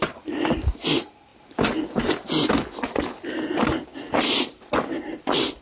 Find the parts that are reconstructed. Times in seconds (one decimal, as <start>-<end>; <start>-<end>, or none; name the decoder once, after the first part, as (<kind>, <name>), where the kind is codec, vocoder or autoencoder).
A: none